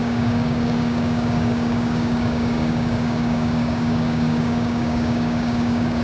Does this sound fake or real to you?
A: fake